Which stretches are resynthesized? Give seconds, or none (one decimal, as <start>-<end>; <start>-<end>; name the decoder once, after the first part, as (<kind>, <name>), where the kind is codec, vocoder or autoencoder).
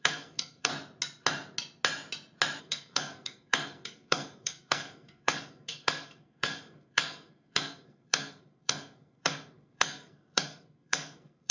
0.0-0.7 (codec, SNAC); 2.6-11.5